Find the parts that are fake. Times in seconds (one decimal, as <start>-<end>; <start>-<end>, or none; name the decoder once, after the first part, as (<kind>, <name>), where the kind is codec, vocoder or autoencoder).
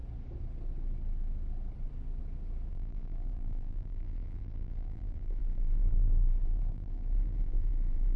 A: 2.7-8.2 (vocoder, BigVGAN v2)